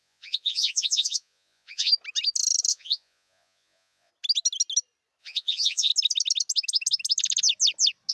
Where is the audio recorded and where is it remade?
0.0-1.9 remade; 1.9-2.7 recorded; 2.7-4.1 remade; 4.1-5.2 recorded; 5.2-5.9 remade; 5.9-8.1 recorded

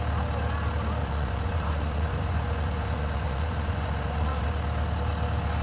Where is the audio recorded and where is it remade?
0.0-1.0 recorded; 1.0-4.4 remade; 4.4-5.6 recorded

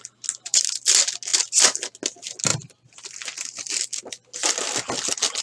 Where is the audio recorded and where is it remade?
0.0-5.4 recorded

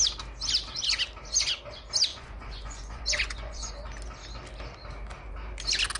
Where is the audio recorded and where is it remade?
0.0-2.1 recorded; 2.1-3.7 remade; 3.7-6.0 recorded

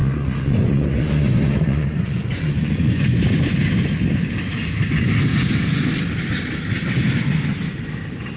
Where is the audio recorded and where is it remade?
0.0-3.2 remade; 3.2-8.4 recorded